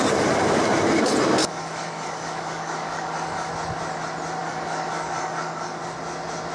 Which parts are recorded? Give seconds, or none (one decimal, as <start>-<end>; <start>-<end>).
0.0-1.4; 3.5-4.4; 5.8-6.5